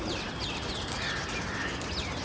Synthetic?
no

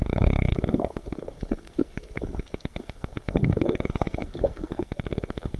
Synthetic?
yes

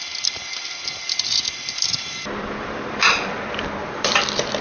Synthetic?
yes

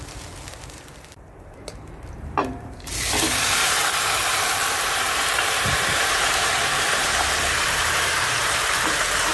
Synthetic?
yes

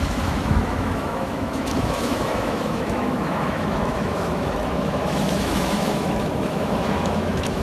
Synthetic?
yes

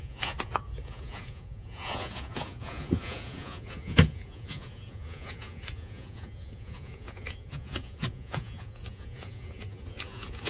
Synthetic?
yes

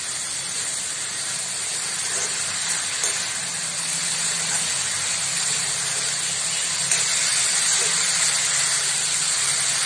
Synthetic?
no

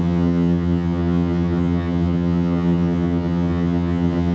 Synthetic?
yes